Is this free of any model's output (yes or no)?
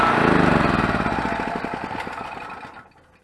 yes